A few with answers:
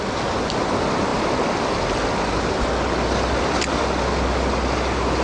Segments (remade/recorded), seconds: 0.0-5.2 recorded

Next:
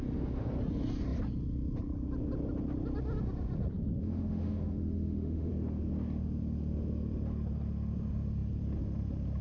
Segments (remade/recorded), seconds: 0.0-4.0 recorded; 4.0-5.5 remade; 5.5-9.4 recorded

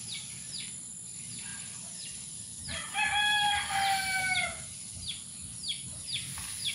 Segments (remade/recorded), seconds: 0.0-6.7 recorded